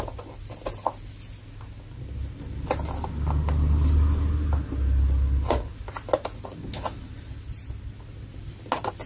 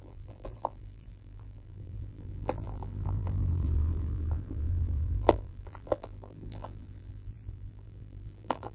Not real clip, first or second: second